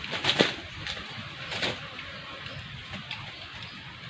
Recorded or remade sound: recorded